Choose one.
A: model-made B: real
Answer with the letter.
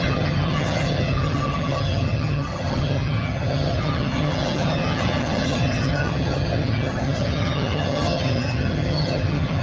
A